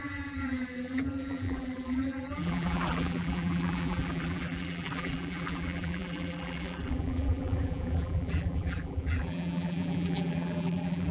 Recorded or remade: remade